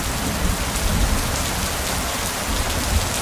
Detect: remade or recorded recorded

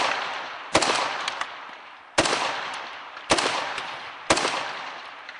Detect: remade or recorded remade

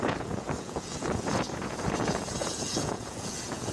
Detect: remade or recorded remade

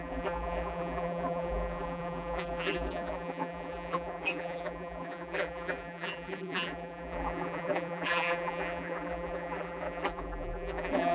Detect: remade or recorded remade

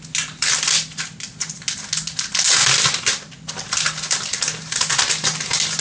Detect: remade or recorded recorded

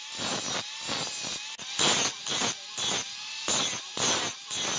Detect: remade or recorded recorded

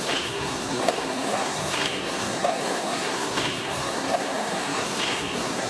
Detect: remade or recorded remade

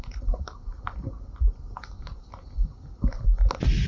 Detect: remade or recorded recorded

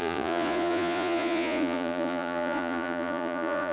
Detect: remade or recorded remade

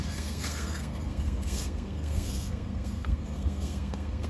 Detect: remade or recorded remade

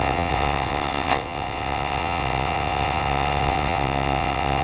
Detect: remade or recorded remade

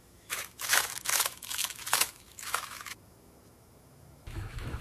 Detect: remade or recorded remade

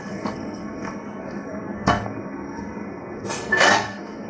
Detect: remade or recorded remade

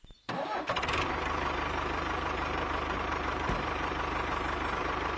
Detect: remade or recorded remade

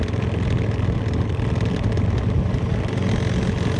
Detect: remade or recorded recorded